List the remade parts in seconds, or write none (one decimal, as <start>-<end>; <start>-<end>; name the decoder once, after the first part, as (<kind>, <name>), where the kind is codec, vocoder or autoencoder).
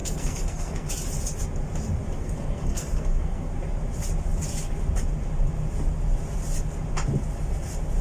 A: 0.0-0.9 (codec, SNAC); 2.2-3.5